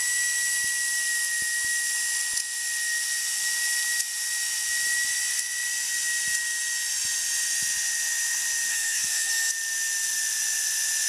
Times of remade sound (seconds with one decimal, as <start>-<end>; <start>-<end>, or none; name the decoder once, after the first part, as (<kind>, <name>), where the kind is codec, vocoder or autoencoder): 8.7-9.5 (codec, SNAC)